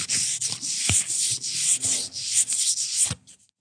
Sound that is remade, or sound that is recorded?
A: recorded